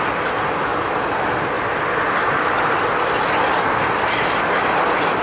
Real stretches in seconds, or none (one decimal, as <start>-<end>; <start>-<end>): 0.0-5.2